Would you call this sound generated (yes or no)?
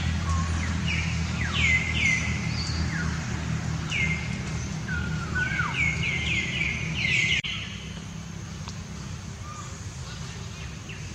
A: no